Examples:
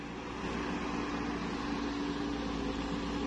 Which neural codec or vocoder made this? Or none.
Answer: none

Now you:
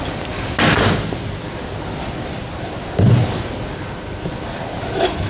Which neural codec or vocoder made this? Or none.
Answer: none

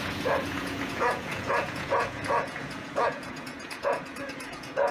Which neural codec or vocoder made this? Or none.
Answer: vocoder, Vocos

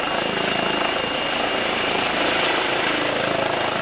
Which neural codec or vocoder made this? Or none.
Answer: none